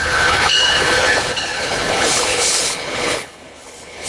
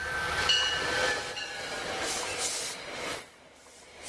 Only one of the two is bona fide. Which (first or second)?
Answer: second